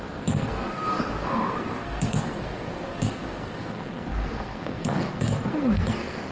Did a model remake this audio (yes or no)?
yes